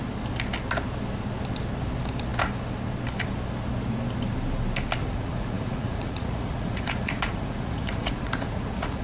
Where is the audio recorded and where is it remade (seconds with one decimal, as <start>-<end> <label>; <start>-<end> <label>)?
0.0-5.0 recorded; 5.0-9.0 remade